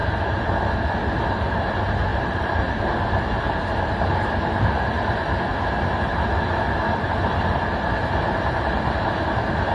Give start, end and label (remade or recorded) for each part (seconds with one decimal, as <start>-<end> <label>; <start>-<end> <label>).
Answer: 0.0-2.1 recorded; 2.1-2.8 remade; 2.8-9.7 recorded

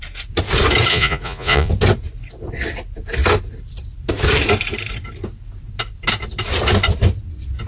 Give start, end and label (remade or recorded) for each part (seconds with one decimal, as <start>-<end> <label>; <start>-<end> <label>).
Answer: 0.0-0.9 recorded; 0.9-1.7 remade; 1.7-7.7 recorded

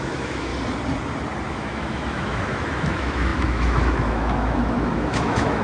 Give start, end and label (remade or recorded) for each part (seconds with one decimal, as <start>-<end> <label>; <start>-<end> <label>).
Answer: 0.0-0.5 remade; 0.5-1.5 recorded; 1.5-5.6 remade

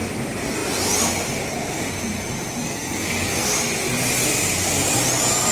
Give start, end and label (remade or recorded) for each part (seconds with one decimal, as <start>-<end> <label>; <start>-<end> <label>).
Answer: 0.0-2.6 recorded; 2.6-3.5 remade; 3.5-5.5 recorded

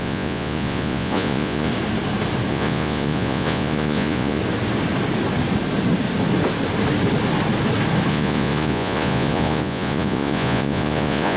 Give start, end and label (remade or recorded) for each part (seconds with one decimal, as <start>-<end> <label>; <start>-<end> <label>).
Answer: 0.0-1.7 remade; 1.7-2.5 recorded; 2.5-4.4 remade; 4.4-8.1 recorded; 8.1-11.4 remade